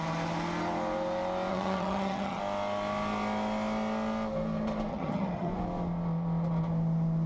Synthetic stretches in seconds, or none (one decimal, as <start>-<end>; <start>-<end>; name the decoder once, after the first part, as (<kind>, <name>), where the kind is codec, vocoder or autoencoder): 1.5-2.4 (vocoder, HiFi-GAN); 4.9-5.5